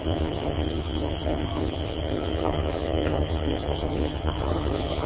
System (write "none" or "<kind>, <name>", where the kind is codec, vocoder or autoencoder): vocoder, HiFi-GAN